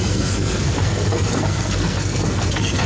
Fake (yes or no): yes